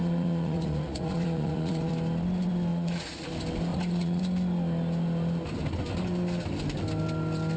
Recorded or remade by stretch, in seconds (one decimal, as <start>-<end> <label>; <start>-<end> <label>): 0.0-1.9 remade; 1.9-2.7 recorded; 2.7-3.3 remade; 3.3-3.7 recorded; 3.7-4.2 remade; 4.2-7.6 recorded